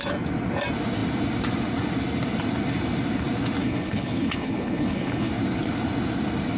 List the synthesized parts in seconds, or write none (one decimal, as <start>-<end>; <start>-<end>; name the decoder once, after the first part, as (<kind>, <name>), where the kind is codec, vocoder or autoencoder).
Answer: 3.6-5.3 (codec, HILCodec)